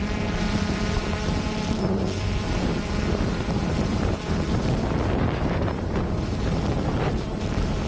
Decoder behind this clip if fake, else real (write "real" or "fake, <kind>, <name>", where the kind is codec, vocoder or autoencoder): fake, vocoder, BigVGAN v2